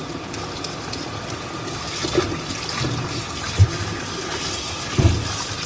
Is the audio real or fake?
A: real